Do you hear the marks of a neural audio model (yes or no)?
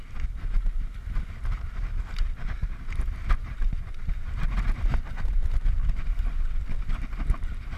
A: no